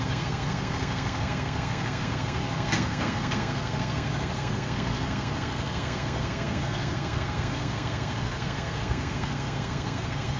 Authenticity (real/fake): fake